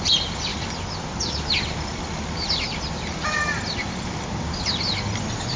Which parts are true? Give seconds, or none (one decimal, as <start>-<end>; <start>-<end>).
0.0-5.6